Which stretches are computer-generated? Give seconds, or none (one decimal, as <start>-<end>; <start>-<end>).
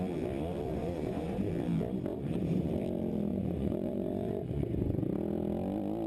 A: 0.7-1.5; 2.1-2.7; 3.3-5.0